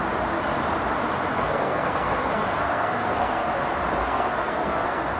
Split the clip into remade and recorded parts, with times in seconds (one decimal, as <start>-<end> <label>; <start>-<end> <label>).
0.0-1.3 recorded; 1.3-3.5 remade; 3.5-4.0 recorded; 4.0-5.2 remade